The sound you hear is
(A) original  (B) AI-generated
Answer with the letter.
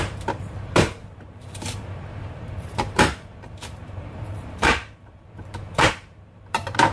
B